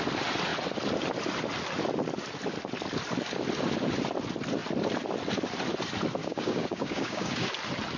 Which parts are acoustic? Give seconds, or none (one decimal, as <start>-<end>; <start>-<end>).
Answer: 0.0-6.2; 7.5-8.0